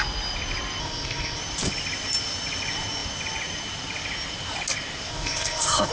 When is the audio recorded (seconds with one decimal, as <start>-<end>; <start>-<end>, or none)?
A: 0.0-0.8; 1.4-5.1

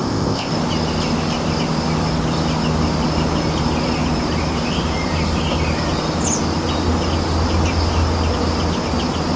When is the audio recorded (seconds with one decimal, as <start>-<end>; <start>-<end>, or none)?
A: 0.5-9.4

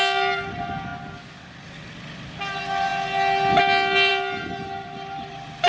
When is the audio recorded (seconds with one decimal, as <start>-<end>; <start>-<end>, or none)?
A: 0.0-5.7